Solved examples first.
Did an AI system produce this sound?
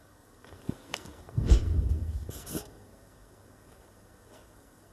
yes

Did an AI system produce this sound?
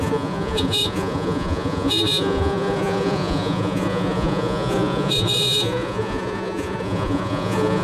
yes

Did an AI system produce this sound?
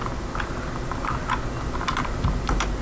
no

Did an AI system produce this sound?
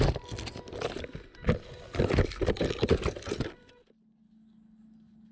no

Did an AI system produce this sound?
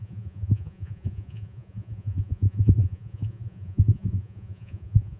yes